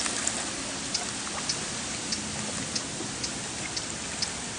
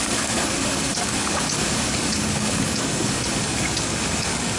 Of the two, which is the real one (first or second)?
first